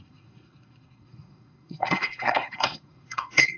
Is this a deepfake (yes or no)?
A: yes